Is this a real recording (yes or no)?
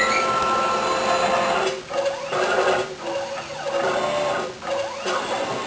yes